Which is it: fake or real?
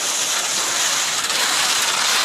real